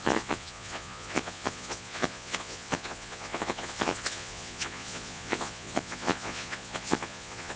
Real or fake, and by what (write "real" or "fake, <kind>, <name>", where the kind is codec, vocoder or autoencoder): fake, vocoder, Vocos